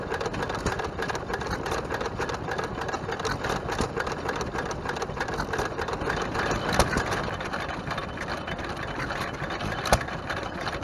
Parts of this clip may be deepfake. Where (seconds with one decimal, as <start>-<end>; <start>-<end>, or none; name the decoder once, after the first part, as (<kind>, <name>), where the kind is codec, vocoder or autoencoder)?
none

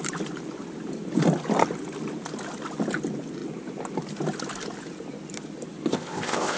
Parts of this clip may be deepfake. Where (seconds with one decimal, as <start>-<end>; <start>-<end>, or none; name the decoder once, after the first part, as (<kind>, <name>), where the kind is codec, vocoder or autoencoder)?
5.9-6.6 (codec, ZipCodec)

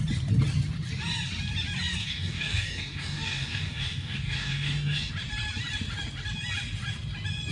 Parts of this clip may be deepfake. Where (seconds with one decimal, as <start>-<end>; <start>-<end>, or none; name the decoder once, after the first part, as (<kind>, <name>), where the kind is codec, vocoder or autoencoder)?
2.0-5.1 (codec, DAC)

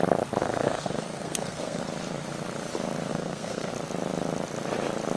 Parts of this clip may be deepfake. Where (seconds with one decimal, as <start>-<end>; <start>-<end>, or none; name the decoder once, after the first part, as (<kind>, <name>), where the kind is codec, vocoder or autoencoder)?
0.4-1.8 (codec, SNAC); 3.1-3.7

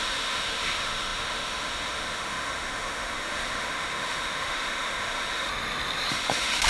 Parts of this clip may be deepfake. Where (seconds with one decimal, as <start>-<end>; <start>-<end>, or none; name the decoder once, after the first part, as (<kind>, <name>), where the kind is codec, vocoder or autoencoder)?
0.0-5.5 (autoencoder, DAC-VAE); 6.1-6.7

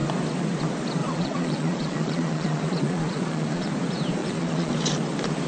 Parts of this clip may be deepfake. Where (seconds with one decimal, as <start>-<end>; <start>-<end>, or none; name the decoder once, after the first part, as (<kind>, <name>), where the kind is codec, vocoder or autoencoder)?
1.0-3.7 (vocoder, Vocos); 4.2-4.7

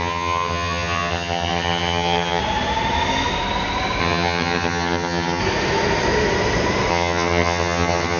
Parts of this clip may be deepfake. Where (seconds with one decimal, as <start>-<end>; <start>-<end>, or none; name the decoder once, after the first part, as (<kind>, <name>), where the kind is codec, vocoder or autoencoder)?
0.0-2.4 (vocoder, HiFi-GAN); 4.0-5.4; 6.9-8.2